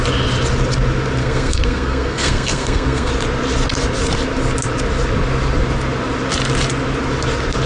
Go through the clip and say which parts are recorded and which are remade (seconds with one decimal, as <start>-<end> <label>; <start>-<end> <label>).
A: 0.0-1.2 recorded; 1.2-3.1 remade; 3.1-7.7 recorded